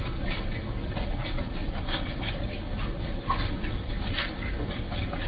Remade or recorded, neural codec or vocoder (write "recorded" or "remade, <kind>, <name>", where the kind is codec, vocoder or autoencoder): recorded